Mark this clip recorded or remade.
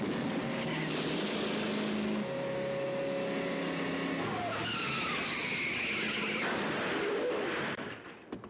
recorded